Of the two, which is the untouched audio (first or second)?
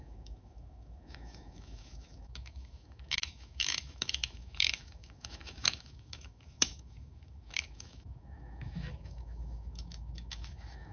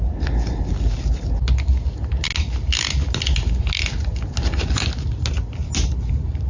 second